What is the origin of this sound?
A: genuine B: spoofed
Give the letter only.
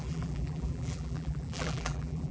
B